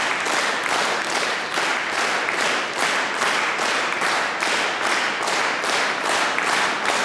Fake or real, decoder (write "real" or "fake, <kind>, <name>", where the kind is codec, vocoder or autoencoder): real